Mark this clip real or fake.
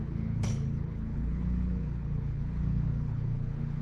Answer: fake